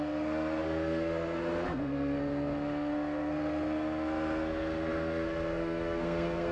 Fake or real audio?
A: fake